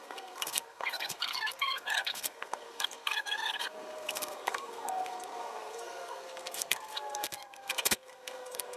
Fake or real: fake